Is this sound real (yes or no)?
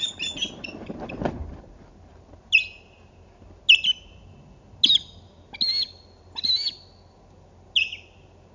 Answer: yes